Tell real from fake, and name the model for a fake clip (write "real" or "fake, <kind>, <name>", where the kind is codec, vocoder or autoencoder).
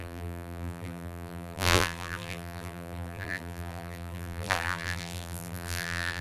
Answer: fake, vocoder, BigVGAN v2